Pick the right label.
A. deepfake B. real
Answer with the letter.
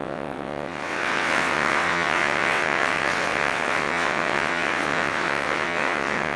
A